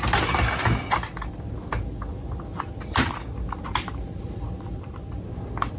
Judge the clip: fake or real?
real